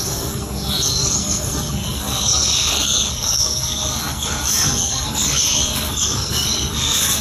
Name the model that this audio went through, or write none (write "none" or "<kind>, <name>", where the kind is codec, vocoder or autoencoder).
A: codec, SNAC